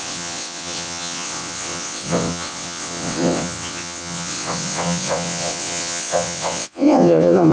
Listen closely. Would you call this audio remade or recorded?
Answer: remade